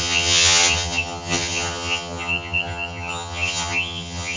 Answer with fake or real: fake